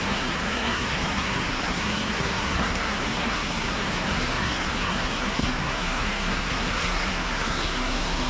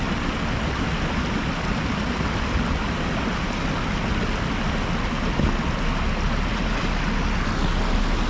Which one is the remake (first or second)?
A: first